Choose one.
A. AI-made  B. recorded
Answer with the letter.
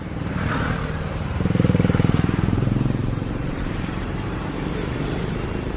A